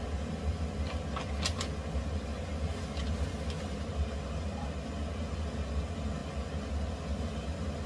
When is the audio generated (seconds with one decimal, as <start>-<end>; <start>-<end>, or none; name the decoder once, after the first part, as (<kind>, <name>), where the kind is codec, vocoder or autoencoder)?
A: none